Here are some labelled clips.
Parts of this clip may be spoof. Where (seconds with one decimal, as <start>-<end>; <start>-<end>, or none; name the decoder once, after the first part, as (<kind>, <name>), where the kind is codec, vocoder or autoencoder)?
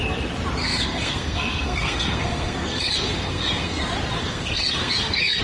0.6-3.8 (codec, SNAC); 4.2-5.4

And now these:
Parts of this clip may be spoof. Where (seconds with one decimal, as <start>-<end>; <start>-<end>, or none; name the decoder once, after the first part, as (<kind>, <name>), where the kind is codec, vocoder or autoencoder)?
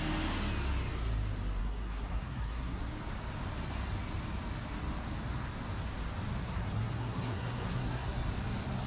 1.6-2.8 (codec, SNAC); 6.4-8.3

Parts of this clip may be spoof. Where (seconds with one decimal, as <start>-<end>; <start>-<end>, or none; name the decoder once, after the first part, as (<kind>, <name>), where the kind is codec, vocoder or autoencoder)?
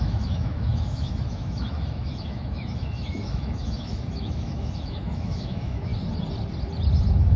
0.0-5.9 (autoencoder, DAC-VAE)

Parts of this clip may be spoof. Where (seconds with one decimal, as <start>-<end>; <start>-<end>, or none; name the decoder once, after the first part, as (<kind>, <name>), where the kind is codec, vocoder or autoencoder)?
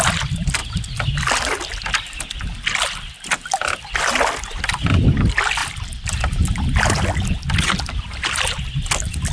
none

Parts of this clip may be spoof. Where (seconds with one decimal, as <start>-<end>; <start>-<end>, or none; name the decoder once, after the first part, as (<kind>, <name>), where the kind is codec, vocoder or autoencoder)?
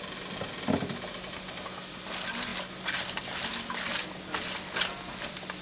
none